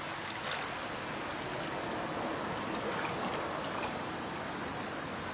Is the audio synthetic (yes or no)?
no